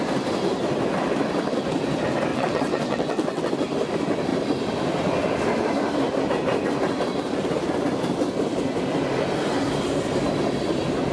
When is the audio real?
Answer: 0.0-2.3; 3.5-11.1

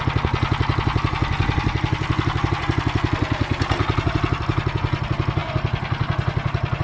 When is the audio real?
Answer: 0.0-6.8

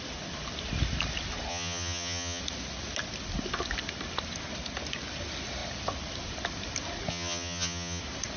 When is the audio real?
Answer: 0.0-1.5; 2.4-7.1; 8.0-8.4

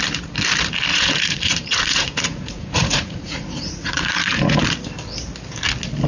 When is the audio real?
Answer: 0.0-0.9; 4.6-6.1